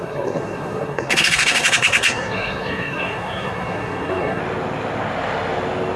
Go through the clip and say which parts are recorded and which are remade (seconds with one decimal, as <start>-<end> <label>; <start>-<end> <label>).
0.0-4.4 remade; 4.4-6.0 recorded